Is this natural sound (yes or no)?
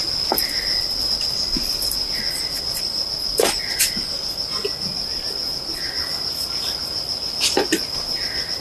yes